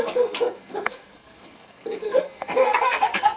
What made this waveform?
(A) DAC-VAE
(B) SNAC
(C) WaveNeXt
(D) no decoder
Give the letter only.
B